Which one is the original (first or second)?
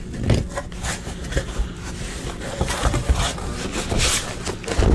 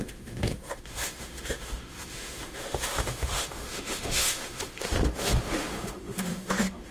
first